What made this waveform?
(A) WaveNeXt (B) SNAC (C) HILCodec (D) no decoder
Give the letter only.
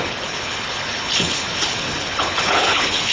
C